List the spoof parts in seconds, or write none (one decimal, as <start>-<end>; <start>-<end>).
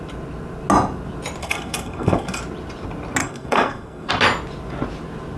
1.4-2.4; 3.2-4.1